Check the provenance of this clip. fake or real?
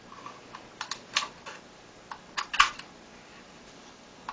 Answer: real